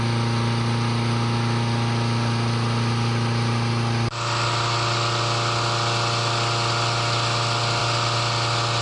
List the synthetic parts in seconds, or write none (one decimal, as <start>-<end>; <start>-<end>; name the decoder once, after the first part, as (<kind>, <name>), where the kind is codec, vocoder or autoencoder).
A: none